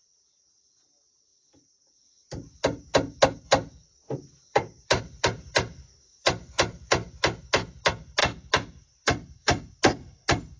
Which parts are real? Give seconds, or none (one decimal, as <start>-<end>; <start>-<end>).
0.0-4.0; 7.4-8.2; 9.7-10.6